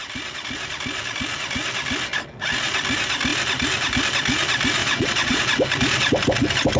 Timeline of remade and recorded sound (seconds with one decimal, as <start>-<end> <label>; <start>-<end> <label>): 0.0-4.8 recorded; 4.8-5.4 remade; 5.4-6.8 recorded